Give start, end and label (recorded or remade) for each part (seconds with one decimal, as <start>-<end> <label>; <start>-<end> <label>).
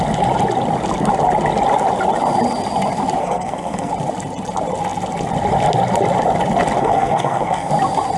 0.0-3.2 recorded; 3.2-3.9 remade; 3.9-6.8 recorded; 6.8-7.7 remade; 7.7-8.2 recorded